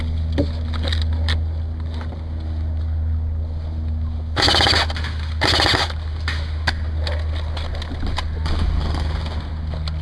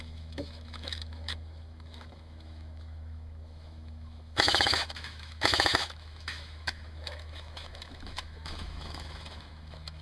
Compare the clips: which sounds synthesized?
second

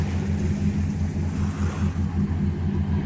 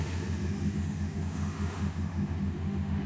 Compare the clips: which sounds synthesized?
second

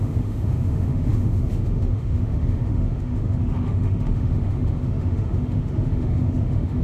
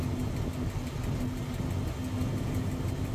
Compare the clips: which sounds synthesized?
first